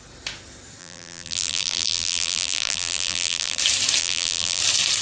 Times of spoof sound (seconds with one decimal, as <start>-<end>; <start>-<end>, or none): 0.8-3.6; 4.0-4.6